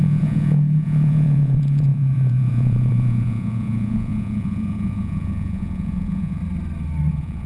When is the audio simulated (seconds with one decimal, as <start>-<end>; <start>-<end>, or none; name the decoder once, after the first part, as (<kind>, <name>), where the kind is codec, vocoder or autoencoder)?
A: 0.0-6.4 (vocoder, Vocos); 7.1-7.5